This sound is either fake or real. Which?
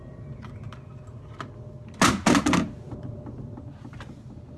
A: real